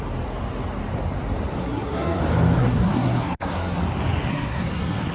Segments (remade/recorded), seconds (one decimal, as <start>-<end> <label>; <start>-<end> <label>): 0.0-1.6 recorded; 1.6-2.2 remade; 2.2-2.6 recorded; 2.6-3.8 remade; 3.8-4.3 recorded; 4.3-5.1 remade